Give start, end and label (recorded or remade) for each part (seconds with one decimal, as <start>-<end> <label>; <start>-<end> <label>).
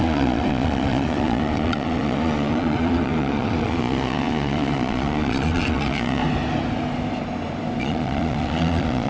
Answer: 0.0-6.2 remade; 6.2-7.8 recorded; 7.8-9.1 remade